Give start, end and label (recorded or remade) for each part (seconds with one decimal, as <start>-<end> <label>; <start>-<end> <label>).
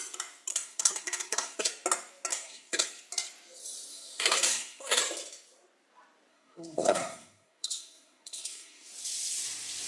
0.0-0.5 recorded; 0.5-1.7 remade; 1.7-2.3 recorded; 2.3-2.9 remade; 2.9-3.9 recorded; 3.9-5.0 remade; 5.0-6.3 recorded; 6.3-8.9 remade; 8.9-9.9 recorded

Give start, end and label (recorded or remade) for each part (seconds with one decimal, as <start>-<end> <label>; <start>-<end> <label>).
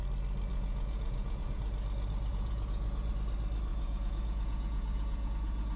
0.0-0.5 recorded; 0.5-1.6 remade; 1.6-2.3 recorded; 2.3-3.1 remade; 3.1-3.7 recorded; 3.7-5.8 remade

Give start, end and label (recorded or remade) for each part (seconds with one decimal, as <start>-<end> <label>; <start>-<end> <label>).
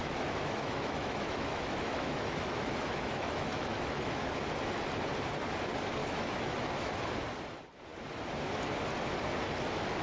0.0-4.3 remade; 4.3-6.0 recorded; 6.0-6.9 remade; 6.9-10.0 recorded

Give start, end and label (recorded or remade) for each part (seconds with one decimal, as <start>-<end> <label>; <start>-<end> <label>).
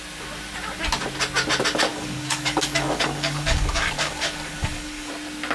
0.0-1.9 recorded; 1.9-5.1 remade; 5.1-5.5 recorded